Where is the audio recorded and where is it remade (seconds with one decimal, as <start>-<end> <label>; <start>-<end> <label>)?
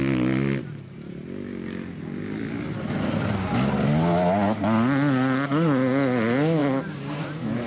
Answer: 0.0-7.7 recorded